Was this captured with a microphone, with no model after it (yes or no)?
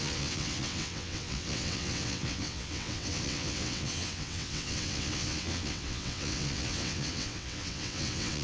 no